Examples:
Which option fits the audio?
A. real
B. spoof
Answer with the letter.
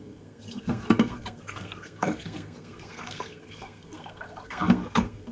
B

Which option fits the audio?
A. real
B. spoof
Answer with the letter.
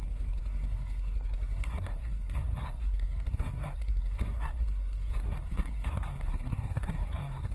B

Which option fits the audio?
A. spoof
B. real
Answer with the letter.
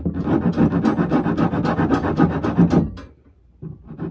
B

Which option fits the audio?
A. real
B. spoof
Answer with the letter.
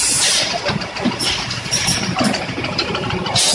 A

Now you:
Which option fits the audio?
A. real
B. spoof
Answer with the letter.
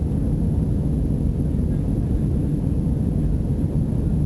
A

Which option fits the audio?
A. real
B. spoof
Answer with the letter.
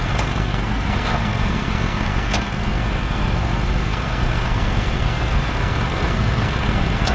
B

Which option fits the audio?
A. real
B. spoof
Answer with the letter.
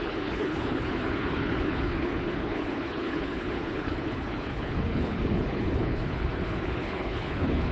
B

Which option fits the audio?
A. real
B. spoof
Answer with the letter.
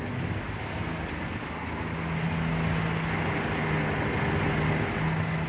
A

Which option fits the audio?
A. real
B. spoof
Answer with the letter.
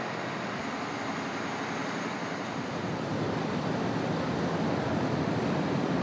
B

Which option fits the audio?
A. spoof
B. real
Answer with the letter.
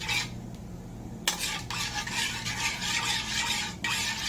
B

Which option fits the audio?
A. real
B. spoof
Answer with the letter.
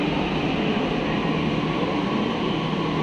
A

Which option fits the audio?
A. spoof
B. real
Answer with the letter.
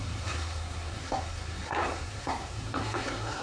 A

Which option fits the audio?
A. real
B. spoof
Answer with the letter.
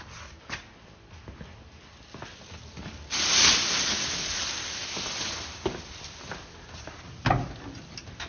A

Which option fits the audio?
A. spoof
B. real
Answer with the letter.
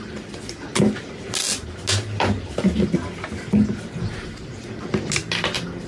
B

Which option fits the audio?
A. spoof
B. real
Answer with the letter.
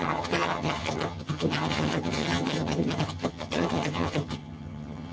A